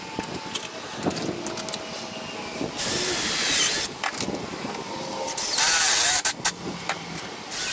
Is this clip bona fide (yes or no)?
yes